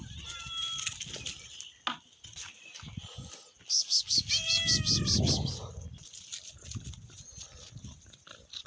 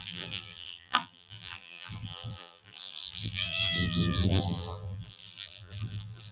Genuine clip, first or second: first